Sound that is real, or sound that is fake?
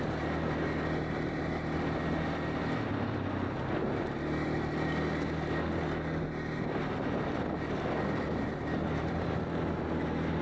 real